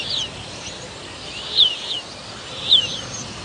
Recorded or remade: recorded